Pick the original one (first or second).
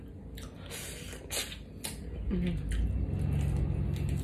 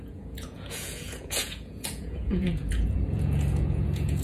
first